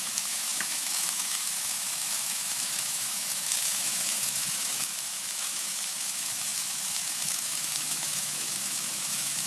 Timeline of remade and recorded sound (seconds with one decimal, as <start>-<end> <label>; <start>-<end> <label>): 0.0-9.5 remade

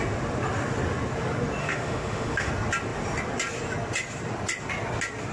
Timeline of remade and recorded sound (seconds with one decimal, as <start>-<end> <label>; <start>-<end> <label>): 0.0-1.6 recorded; 1.6-2.5 remade; 2.5-5.3 recorded

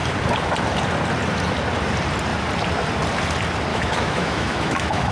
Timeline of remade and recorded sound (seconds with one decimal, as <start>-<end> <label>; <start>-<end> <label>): 0.0-3.7 recorded; 3.7-5.1 remade